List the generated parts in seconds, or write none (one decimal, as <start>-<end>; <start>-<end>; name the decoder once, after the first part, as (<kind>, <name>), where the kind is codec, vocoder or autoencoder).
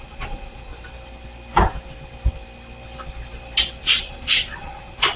0.0-0.7 (vocoder, Vocos); 3.8-5.2